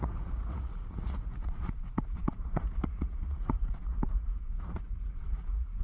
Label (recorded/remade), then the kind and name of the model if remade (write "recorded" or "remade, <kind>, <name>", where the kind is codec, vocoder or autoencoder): remade, vocoder, Vocos